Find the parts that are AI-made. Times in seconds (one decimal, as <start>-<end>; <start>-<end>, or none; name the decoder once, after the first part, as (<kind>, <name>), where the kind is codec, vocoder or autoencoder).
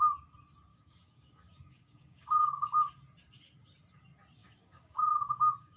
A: 0.7-2.9 (codec, DAC); 4.4-5.8